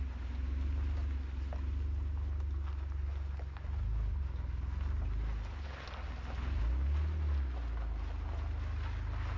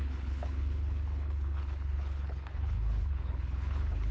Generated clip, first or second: second